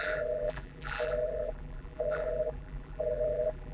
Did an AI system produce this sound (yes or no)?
yes